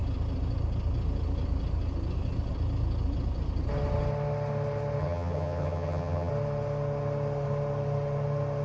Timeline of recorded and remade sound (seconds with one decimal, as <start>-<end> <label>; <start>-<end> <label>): 0.0-5.0 recorded; 5.0-6.3 remade; 6.3-8.6 recorded